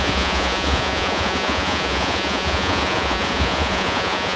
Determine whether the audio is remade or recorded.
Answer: remade